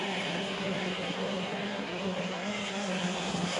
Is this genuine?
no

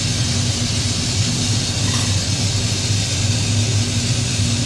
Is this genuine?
yes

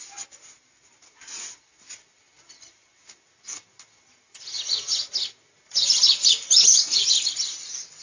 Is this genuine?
yes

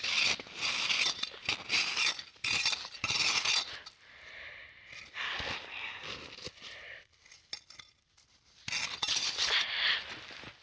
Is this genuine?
yes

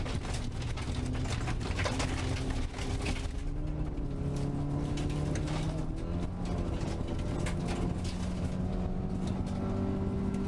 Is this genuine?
yes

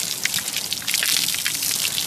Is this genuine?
yes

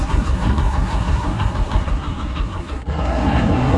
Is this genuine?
no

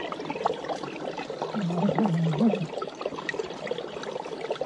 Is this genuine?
yes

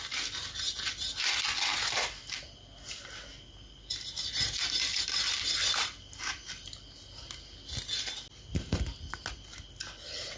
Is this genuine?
yes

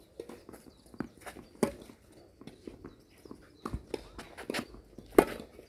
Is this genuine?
yes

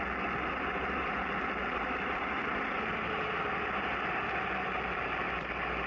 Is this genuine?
yes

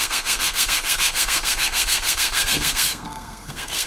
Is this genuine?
no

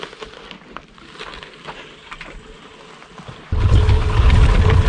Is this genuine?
yes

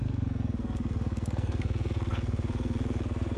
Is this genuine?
no